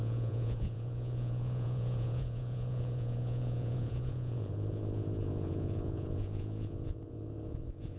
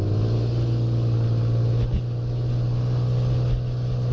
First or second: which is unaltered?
second